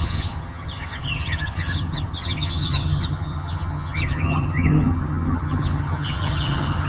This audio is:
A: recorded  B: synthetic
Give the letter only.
B